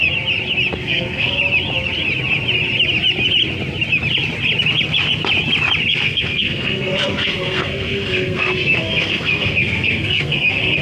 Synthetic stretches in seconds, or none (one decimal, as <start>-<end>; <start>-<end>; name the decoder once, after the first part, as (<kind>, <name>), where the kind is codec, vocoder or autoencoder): 0.8-1.4 (codec, SNAC); 5.9-10.8